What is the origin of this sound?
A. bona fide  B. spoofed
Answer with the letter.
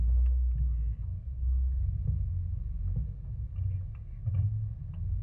A